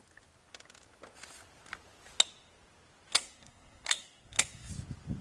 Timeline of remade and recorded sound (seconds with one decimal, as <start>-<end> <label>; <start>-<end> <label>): 0.0-3.1 recorded; 3.1-4.7 remade; 4.7-5.2 recorded